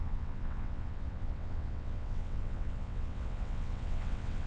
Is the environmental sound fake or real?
fake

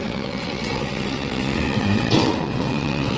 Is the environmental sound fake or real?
fake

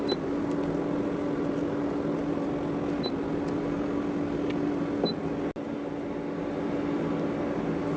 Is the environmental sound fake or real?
real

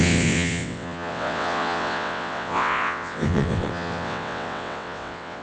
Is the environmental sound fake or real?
fake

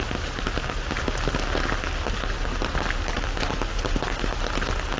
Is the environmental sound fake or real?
real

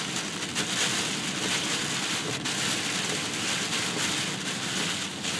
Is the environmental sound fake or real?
real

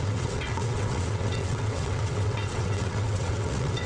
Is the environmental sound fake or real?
fake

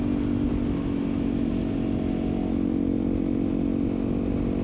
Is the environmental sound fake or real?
real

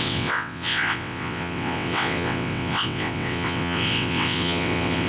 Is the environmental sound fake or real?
fake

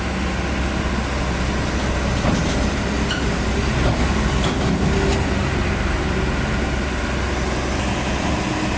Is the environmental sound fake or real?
real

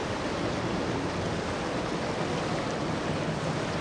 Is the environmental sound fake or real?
real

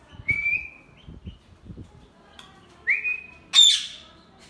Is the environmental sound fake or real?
real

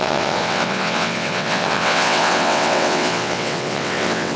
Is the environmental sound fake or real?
fake